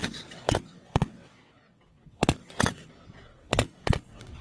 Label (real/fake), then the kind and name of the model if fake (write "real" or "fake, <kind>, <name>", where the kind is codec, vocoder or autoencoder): fake, vocoder, WaveNeXt